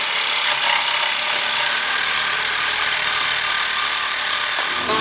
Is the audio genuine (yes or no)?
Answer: yes